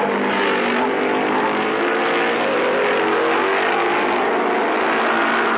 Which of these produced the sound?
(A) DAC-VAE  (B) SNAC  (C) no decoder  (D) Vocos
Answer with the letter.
C